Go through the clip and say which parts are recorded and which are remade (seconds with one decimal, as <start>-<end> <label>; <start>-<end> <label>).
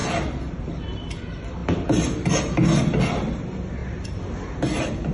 0.0-5.1 recorded